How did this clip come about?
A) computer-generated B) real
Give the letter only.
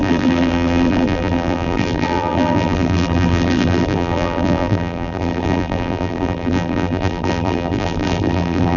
A